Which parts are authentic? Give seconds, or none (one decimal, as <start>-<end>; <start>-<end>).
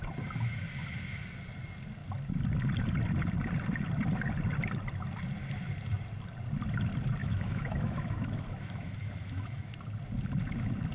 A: 0.0-7.2; 9.7-10.9